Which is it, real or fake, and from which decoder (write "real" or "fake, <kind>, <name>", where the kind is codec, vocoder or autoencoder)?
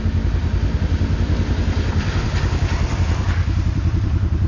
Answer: fake, vocoder, BigVGAN v2